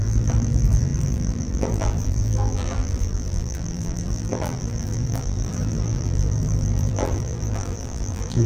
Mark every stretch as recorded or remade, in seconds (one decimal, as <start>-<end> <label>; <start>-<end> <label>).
0.0-8.5 remade